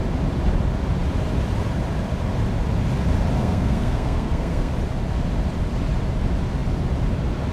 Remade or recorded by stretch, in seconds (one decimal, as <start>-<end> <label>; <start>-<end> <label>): 0.0-3.4 recorded; 3.4-4.7 remade; 4.7-7.5 recorded